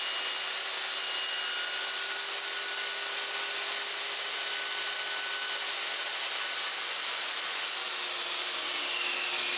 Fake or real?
real